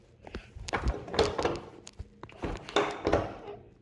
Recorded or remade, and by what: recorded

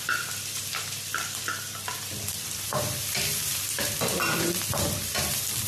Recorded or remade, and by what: remade, vocoder, BigVGAN v2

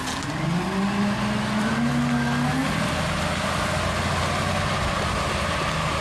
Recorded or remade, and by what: recorded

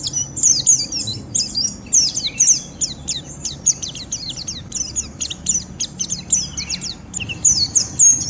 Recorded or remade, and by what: recorded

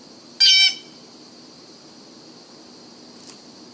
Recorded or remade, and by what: recorded